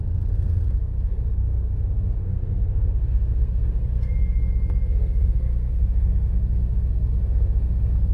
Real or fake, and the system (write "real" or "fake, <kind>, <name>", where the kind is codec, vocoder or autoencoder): fake, codec, SNAC